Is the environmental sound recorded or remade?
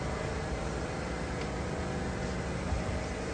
recorded